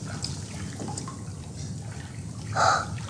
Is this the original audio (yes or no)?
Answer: yes